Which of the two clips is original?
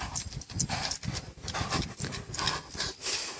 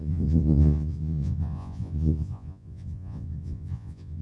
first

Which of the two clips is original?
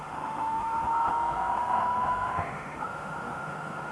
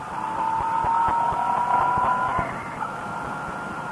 second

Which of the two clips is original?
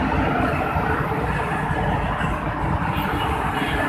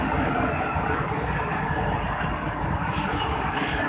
first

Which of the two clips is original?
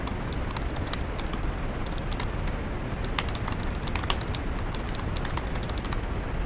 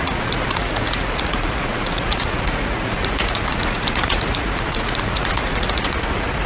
first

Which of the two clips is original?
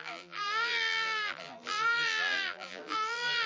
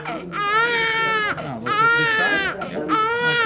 second